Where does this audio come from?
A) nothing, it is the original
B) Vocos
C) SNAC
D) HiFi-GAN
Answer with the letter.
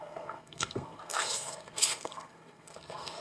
C